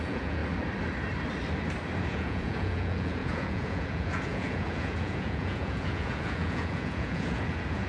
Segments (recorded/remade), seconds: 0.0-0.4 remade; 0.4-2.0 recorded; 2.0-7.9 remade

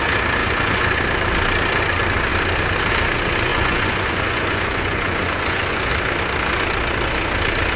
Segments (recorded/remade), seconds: 0.0-0.4 recorded; 0.4-1.0 remade; 1.0-3.5 recorded; 3.5-5.9 remade; 5.9-7.8 recorded

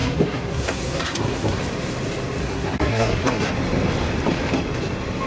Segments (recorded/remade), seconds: 0.0-1.6 remade; 1.6-2.4 recorded; 2.4-3.5 remade; 3.5-5.3 recorded